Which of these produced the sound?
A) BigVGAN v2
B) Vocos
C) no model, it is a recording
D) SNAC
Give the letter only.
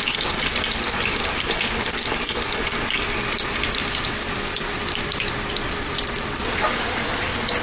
C